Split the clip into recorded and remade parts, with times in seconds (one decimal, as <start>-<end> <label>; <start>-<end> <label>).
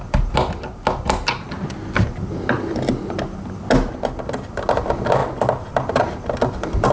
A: 0.0-6.9 recorded